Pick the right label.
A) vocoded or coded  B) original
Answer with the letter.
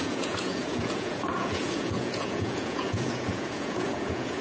A